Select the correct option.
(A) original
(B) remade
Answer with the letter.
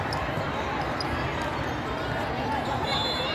A